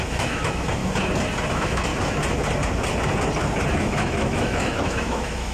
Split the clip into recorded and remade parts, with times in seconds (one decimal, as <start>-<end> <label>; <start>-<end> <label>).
0.0-0.8 remade; 0.8-1.5 recorded; 1.5-1.9 remade; 1.9-3.7 recorded; 3.7-5.5 remade